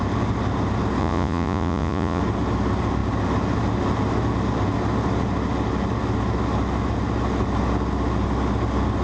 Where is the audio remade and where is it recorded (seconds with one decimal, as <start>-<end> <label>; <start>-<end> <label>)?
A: 0.0-1.0 recorded; 1.0-2.2 remade; 2.2-9.0 recorded